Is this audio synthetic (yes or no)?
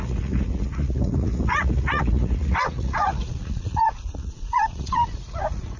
yes